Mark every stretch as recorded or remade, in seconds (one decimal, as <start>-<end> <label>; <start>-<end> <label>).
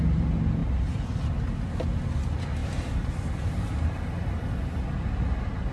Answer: 0.0-2.6 recorded; 2.6-3.1 remade; 3.1-5.7 recorded